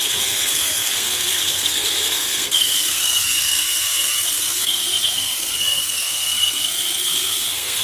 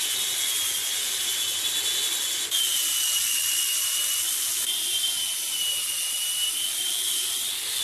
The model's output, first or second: first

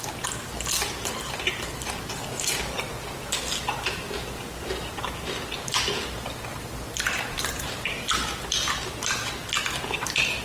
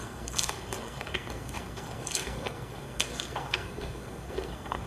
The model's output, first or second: second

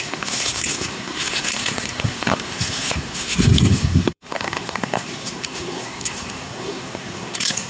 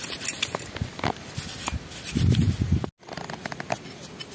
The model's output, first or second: first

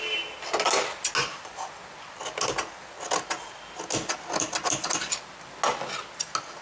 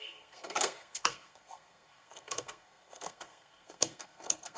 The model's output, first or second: second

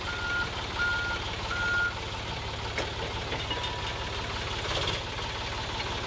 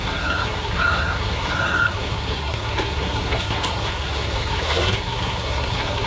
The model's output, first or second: second